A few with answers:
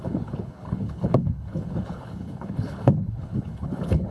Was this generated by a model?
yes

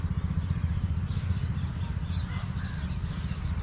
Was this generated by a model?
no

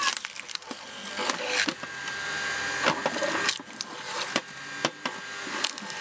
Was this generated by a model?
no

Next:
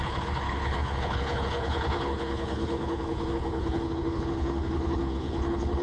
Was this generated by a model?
yes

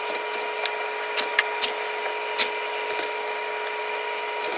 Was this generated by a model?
no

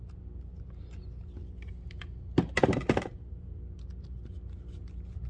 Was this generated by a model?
no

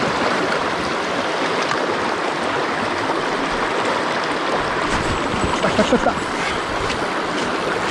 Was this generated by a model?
no